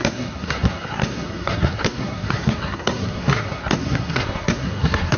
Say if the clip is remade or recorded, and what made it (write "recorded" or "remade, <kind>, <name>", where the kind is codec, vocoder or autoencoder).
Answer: remade, codec, SNAC